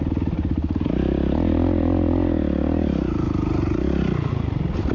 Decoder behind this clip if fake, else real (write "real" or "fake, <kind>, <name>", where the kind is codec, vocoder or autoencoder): real